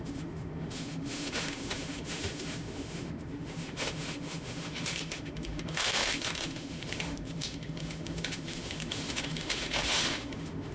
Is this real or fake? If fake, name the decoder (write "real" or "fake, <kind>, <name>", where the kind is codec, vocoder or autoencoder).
fake, autoencoder, DAC-VAE